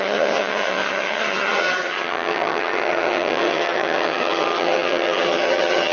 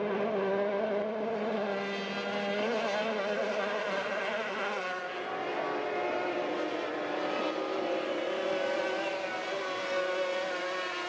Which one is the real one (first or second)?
second